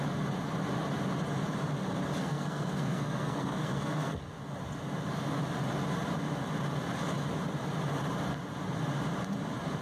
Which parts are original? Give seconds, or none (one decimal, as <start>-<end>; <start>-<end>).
0.0-2.2; 4.2-9.8